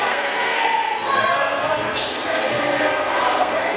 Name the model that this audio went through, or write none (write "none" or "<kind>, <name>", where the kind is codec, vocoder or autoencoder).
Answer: codec, SNAC